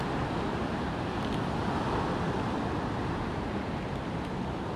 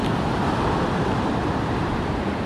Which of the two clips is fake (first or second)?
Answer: second